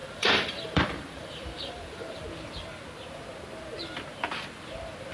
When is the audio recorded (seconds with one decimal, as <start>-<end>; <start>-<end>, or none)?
2.2-5.1